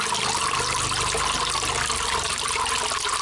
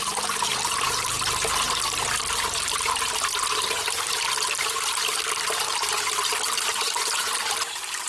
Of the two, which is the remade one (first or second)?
second